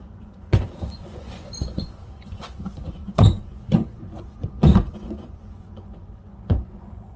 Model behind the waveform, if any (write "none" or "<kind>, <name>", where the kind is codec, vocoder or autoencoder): vocoder, Vocos